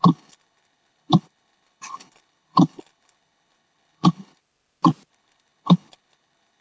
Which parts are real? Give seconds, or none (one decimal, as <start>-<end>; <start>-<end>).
4.4-5.1